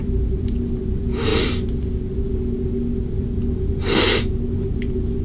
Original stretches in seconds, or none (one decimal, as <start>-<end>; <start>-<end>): 0.0-5.2